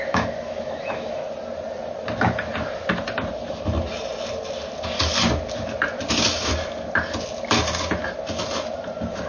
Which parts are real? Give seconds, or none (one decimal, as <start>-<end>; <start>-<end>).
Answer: 1.2-6.1; 6.5-9.3